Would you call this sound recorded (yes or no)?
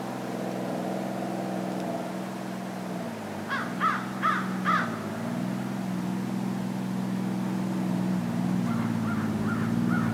yes